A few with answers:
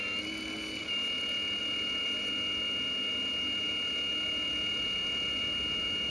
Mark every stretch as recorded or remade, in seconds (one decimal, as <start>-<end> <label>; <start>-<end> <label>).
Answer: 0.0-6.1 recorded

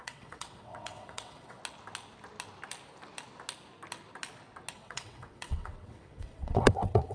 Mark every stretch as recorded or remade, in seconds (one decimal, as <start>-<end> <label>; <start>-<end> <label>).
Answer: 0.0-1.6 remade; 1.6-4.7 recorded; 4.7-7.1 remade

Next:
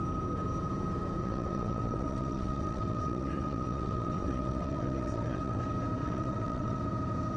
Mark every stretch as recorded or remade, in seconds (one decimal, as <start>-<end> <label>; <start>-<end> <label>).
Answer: 0.0-1.2 recorded; 1.2-5.6 remade; 5.6-6.0 recorded; 6.0-6.8 remade; 6.8-7.4 recorded

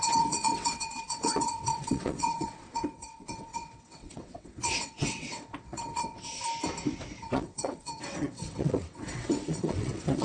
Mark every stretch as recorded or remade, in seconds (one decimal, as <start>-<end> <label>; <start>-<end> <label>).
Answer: 0.0-6.4 remade; 6.4-7.2 recorded; 7.2-10.2 remade

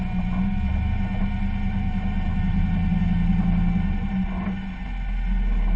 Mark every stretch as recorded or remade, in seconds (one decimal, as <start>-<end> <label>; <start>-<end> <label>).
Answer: 0.0-5.8 recorded

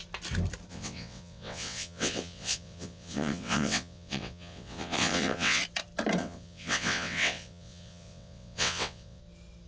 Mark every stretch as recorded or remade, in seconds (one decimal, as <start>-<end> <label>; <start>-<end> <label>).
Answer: 0.0-0.7 recorded; 0.7-5.6 remade; 5.6-6.2 recorded; 6.2-9.2 remade; 9.2-9.7 recorded

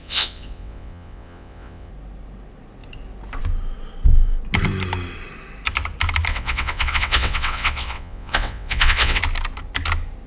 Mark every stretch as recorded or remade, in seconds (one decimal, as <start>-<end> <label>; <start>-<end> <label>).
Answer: 0.0-1.9 remade; 1.9-6.3 recorded; 6.3-9.2 remade; 9.2-10.3 recorded